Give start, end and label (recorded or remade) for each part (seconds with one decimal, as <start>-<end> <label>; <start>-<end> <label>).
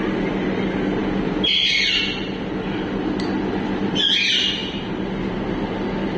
0.0-6.2 recorded